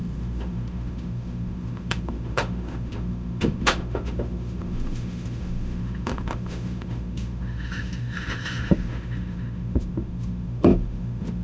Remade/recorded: remade